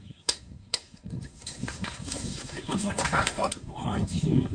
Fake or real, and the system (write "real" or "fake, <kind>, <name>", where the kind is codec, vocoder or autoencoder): fake, codec, SNAC